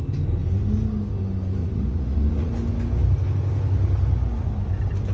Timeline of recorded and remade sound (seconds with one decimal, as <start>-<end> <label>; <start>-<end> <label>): 0.0-1.6 recorded; 1.6-2.5 remade; 2.5-5.1 recorded